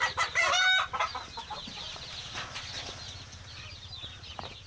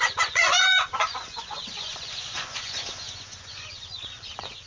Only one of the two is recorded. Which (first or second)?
first